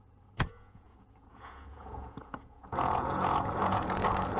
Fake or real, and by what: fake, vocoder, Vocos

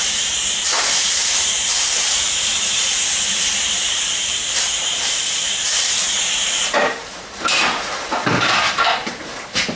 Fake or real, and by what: fake, vocoder, BigVGAN v2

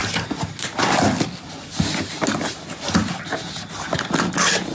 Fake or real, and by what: real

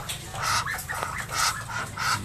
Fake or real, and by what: real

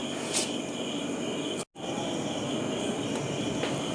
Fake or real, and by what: real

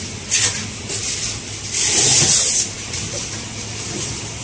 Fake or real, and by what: real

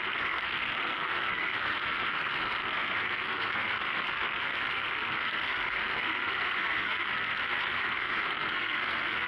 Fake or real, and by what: fake, codec, SNAC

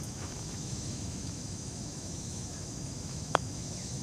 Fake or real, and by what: fake, autoencoder, DAC-VAE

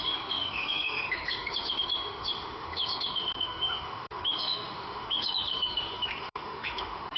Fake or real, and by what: fake, autoencoder, DAC-VAE